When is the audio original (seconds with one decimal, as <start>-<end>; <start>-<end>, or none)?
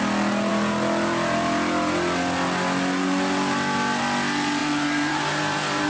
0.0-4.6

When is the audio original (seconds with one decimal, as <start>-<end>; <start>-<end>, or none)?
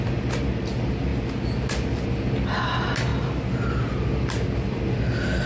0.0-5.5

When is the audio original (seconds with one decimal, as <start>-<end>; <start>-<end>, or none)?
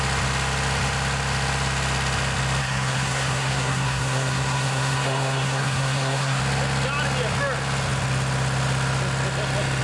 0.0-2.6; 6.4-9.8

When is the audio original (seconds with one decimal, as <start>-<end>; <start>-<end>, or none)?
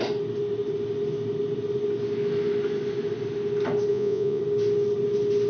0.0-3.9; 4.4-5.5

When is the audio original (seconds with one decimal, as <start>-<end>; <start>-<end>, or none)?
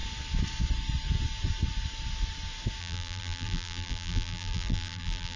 0.0-2.8